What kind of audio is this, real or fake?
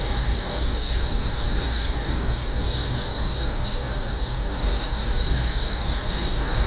fake